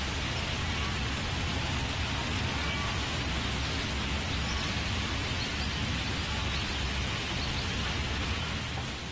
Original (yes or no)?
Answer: yes